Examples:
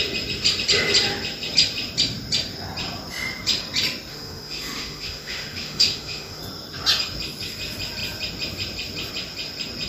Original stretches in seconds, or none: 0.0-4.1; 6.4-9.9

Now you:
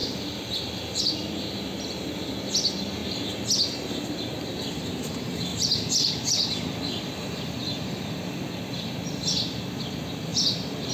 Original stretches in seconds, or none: 0.0-10.9

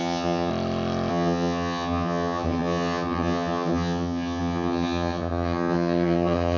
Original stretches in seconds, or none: 0.5-1.1

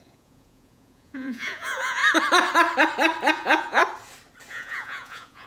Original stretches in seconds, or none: 2.0-3.3; 3.8-4.5